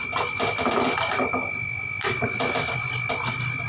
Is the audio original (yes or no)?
yes